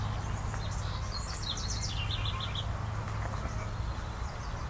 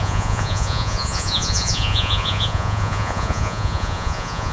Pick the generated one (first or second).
second